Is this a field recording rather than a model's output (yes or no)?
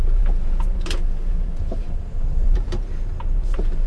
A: no